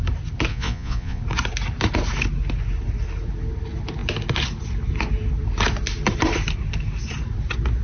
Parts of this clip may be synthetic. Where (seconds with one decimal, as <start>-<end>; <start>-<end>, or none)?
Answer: 0.5-1.2